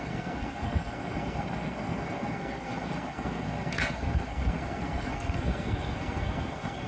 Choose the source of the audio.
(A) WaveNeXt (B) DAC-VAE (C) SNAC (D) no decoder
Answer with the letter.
C